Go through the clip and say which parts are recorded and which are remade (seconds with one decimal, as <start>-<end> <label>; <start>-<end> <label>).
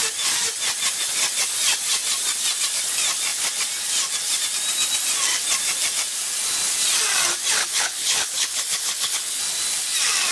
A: 0.0-7.6 recorded; 7.6-9.4 remade; 9.4-10.3 recorded